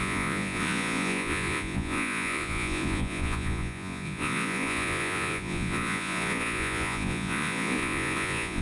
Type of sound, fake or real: fake